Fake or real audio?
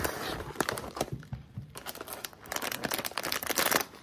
real